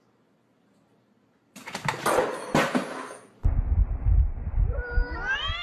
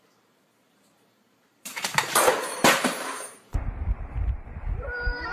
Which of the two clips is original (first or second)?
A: first